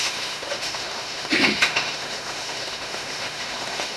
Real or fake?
fake